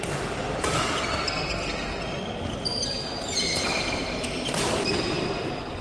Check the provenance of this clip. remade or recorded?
recorded